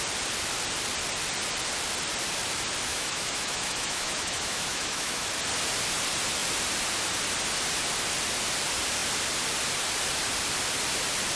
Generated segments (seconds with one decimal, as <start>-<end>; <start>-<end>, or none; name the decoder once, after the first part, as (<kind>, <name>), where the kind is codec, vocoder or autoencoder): 2.9-5.3 (autoencoder, DAC-VAE)